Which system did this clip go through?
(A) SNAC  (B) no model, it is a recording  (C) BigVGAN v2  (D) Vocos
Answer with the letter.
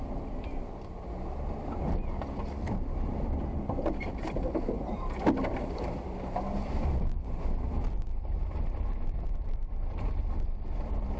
C